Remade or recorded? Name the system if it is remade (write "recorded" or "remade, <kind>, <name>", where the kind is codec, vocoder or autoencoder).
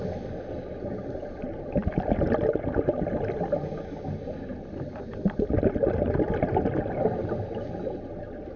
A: recorded